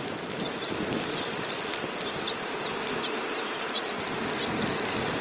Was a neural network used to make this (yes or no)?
no